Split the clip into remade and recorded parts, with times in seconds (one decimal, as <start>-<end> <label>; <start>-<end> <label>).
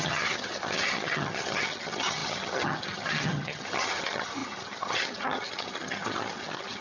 0.0-6.8 remade